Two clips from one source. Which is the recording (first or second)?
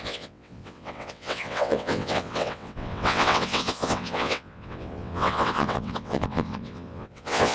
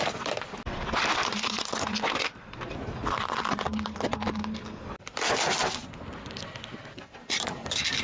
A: second